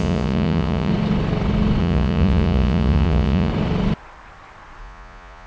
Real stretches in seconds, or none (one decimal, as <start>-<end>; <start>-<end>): 0.9-1.8; 3.5-4.8